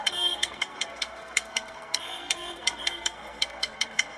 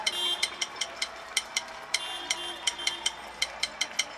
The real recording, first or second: second